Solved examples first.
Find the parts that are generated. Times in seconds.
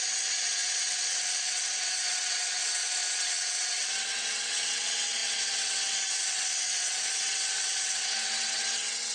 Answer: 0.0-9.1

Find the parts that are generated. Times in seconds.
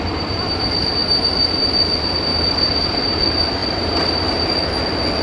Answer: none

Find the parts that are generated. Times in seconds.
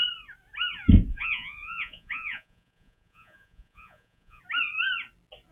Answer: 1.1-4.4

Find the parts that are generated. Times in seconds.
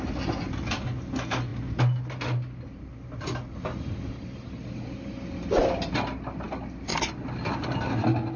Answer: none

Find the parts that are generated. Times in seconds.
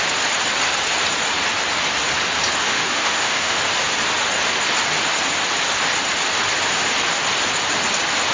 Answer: 2.6-3.6